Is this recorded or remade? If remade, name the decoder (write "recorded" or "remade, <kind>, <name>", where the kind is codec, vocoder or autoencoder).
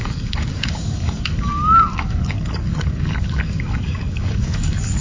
remade, codec, DAC